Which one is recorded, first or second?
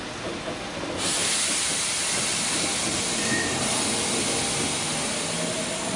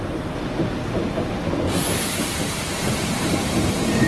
first